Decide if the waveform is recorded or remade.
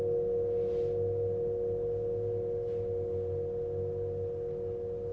recorded